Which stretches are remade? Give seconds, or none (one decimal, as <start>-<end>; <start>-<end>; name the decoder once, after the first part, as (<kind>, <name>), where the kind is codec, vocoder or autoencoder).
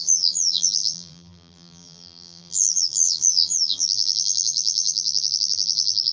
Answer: 0.0-6.1 (vocoder, BigVGAN v2)